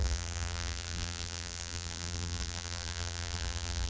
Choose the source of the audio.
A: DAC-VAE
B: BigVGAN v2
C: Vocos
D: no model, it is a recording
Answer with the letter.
B